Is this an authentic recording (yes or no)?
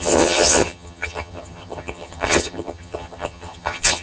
no